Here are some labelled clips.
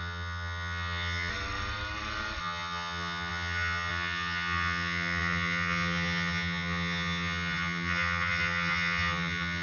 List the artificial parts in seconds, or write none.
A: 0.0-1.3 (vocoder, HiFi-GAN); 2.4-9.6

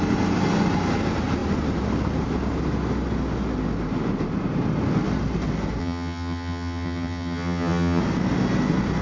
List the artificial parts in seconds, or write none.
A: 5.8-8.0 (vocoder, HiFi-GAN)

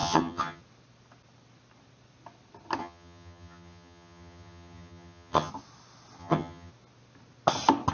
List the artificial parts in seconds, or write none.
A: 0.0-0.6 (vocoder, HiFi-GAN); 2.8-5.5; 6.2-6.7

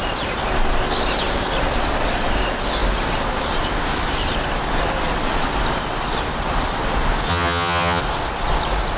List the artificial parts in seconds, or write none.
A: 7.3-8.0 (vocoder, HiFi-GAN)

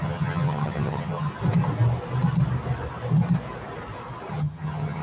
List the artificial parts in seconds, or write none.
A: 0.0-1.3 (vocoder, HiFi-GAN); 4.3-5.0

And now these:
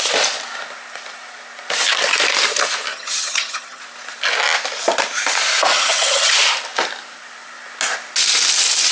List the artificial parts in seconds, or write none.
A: 2.9-3.8 (vocoder, HiFi-GAN); 5.7-6.3

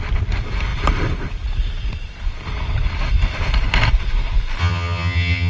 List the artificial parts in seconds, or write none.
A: 4.6-5.5 (vocoder, HiFi-GAN)